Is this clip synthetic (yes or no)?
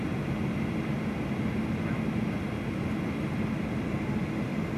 no